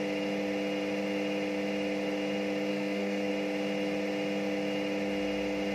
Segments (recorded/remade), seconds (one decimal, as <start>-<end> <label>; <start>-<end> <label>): 0.0-2.7 recorded; 2.7-3.3 remade; 3.3-5.7 recorded